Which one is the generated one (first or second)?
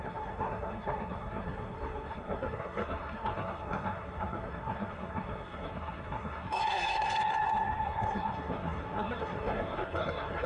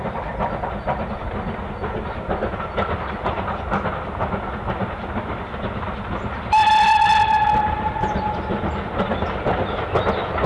first